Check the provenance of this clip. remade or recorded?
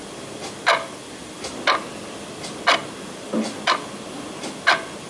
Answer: recorded